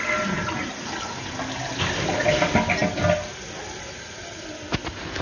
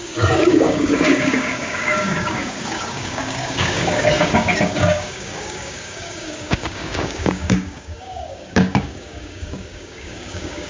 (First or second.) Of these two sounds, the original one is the first